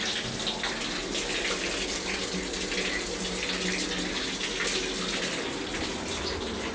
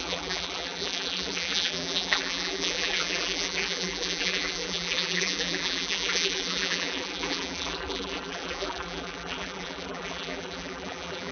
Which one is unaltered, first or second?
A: first